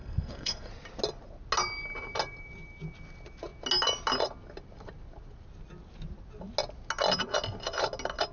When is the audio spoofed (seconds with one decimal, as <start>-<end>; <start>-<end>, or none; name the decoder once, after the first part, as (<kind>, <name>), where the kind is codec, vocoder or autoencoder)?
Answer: 0.0-0.7 (codec, SNAC)

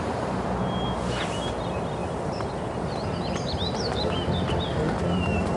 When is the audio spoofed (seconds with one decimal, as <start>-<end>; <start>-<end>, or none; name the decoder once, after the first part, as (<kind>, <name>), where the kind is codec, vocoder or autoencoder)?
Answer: 2.0-4.3 (vocoder, BigVGAN v2); 4.7-5.6

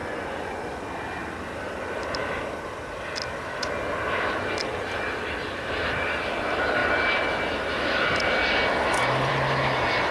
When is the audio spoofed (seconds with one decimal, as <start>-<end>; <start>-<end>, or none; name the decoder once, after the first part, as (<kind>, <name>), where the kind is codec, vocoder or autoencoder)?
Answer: 0.0-0.8 (vocoder, Vocos)

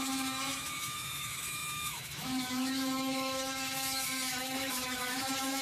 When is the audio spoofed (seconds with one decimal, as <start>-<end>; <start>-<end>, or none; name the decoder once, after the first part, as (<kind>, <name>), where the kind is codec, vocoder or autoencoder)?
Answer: 0.0-5.6 (autoencoder, DAC-VAE)